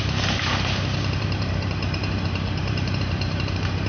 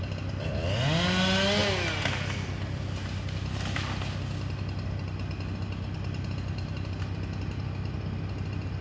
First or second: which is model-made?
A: first